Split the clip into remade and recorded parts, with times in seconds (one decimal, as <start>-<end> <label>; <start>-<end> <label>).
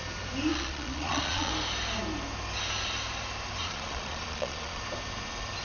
0.0-0.5 recorded; 0.5-1.5 remade; 1.5-3.6 recorded; 3.6-4.8 remade; 4.8-5.6 recorded